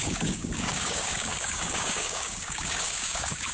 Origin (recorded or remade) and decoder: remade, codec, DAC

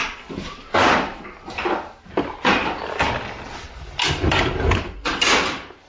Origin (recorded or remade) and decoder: recorded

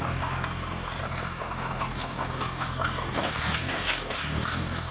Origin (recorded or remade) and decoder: remade, codec, DAC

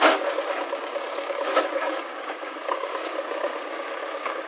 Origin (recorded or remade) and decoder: remade, codec, DAC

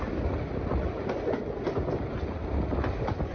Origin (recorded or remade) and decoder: recorded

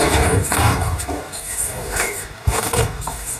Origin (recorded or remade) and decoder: remade, codec, DAC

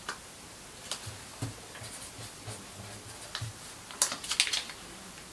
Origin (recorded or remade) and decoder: recorded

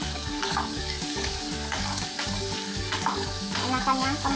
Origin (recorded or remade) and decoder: remade, codec, DAC